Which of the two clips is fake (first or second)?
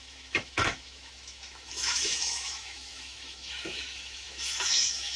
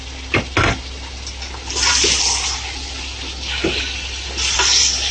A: first